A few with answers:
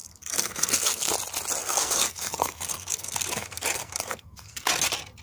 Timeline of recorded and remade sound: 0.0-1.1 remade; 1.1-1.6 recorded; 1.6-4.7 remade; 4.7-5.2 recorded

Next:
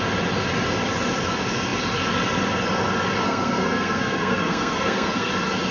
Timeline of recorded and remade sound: 0.0-3.2 recorded; 3.2-5.3 remade; 5.3-5.7 recorded

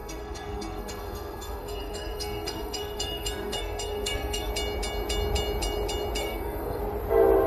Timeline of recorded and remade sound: 0.0-4.5 remade; 4.5-6.2 recorded; 6.2-6.8 remade; 6.8-7.5 recorded

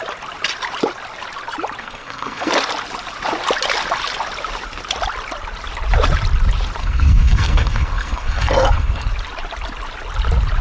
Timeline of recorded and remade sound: 0.0-1.8 recorded; 1.8-2.5 remade; 2.5-6.8 recorded; 6.8-9.1 remade; 9.1-10.6 recorded

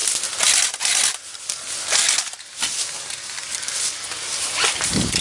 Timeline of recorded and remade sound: 0.0-5.2 recorded

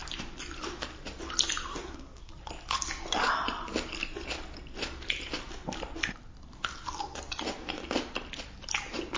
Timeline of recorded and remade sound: 0.0-1.7 recorded; 1.7-2.3 remade; 2.3-9.2 recorded